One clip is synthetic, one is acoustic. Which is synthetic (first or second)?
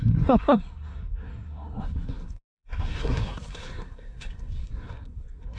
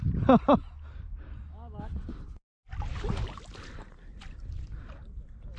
first